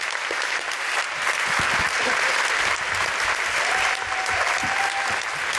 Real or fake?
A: real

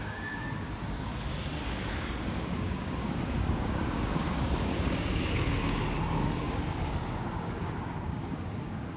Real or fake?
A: fake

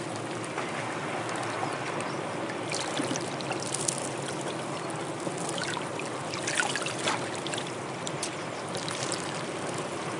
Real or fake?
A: real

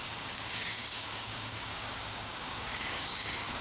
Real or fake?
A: fake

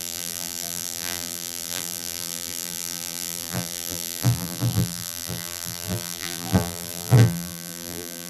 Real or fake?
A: fake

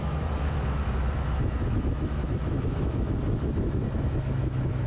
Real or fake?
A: fake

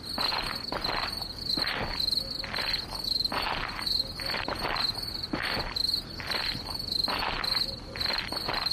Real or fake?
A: real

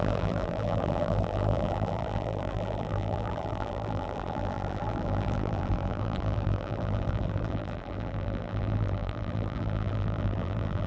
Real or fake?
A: fake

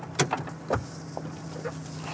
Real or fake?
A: real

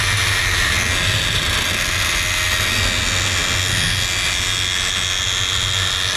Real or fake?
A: real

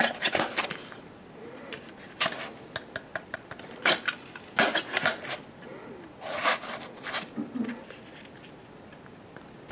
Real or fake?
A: real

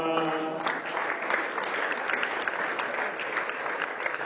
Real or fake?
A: real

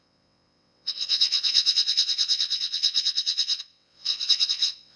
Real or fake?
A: fake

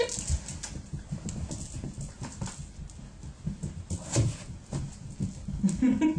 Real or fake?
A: real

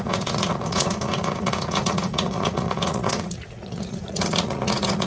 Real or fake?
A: fake